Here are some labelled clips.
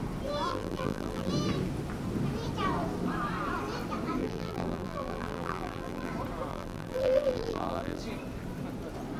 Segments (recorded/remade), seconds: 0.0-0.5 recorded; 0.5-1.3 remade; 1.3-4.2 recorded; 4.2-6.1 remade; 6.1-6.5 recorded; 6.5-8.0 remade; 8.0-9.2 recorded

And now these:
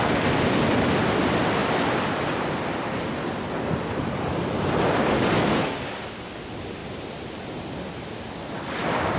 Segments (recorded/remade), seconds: 0.0-9.2 remade

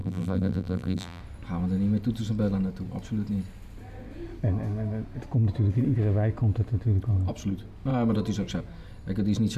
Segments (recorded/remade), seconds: 0.0-1.2 remade; 1.2-9.6 recorded